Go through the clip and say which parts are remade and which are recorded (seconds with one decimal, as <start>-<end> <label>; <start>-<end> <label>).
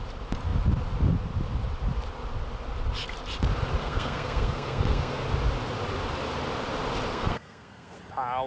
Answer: 0.0-3.8 recorded; 3.8-5.2 remade; 5.2-7.1 recorded; 7.1-8.0 remade; 8.0-8.5 recorded